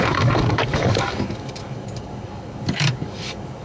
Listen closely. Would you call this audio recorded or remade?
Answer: remade